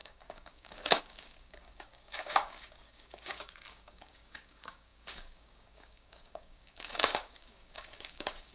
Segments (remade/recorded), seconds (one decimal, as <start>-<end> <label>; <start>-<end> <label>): 0.0-8.5 remade